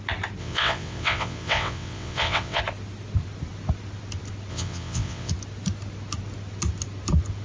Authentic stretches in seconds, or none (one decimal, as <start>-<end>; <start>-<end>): 0.0-0.4; 2.6-4.5; 5.3-7.4